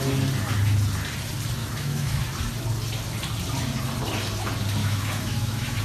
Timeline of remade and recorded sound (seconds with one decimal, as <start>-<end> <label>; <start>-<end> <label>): 0.0-1.6 recorded; 1.6-2.2 remade; 2.2-4.8 recorded; 4.8-5.8 remade